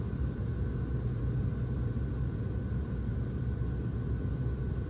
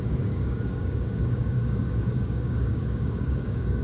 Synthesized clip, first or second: second